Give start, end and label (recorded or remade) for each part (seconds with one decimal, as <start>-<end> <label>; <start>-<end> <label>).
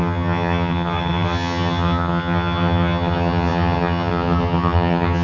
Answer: 0.0-5.2 remade